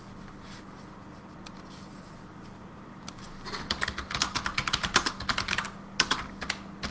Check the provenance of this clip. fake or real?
real